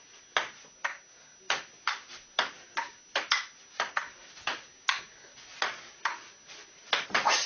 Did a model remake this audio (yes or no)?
no